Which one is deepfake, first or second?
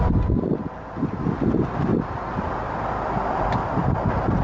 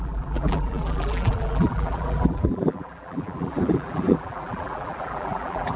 second